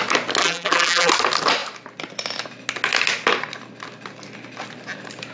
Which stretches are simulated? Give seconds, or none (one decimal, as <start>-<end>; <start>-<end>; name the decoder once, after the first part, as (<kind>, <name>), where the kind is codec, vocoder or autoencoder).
0.4-1.1 (vocoder, BigVGAN v2)